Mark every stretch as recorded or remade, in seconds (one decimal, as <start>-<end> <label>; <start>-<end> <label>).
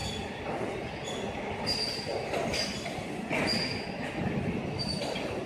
0.0-5.5 recorded